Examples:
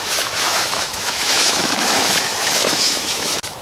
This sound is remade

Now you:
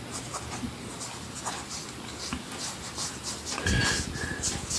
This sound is recorded